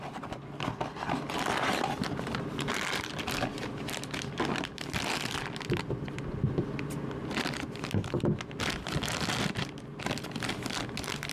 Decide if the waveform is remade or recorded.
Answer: recorded